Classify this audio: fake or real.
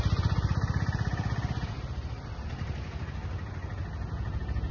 real